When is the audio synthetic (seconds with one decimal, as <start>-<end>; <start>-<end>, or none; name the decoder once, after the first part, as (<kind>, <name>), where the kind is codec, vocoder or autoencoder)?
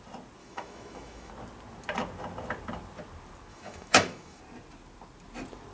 0.4-1.3 (autoencoder, DAC-VAE); 3.5-4.4